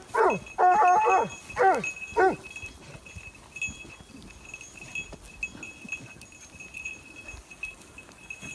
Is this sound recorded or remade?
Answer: recorded